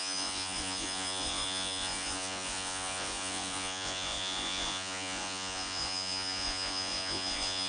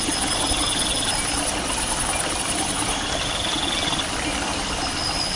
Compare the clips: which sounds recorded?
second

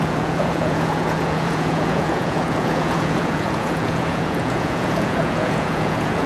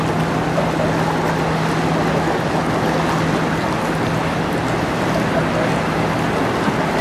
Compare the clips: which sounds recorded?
second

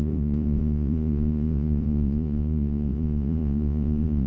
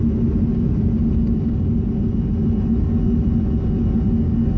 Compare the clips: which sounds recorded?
second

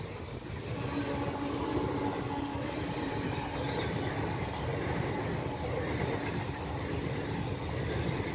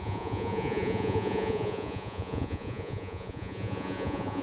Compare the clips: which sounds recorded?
first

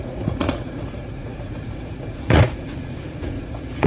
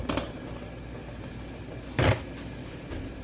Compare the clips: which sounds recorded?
second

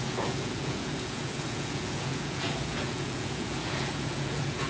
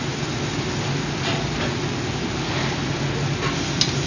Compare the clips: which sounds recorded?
second